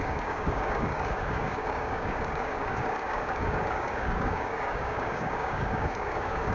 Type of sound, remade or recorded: remade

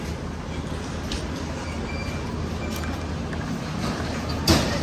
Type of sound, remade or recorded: recorded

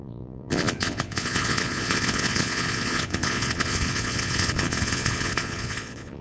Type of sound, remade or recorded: remade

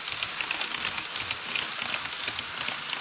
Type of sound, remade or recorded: recorded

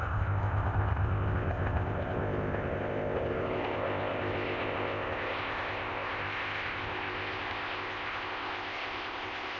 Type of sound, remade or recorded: remade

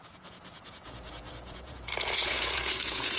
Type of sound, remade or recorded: remade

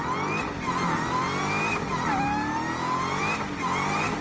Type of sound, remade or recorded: recorded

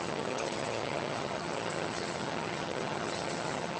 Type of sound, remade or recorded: remade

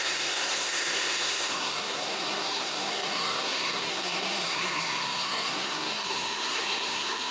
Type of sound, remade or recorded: remade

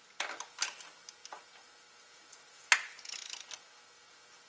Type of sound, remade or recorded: recorded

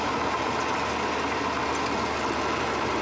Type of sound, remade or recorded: recorded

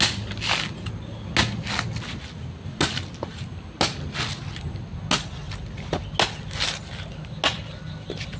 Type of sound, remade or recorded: recorded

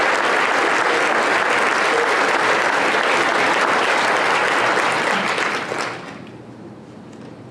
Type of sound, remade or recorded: recorded